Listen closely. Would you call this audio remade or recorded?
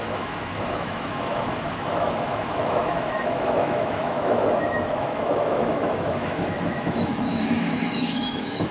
remade